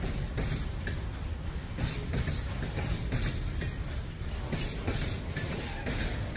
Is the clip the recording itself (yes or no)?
yes